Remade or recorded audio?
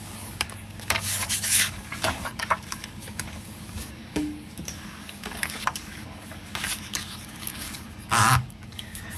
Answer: remade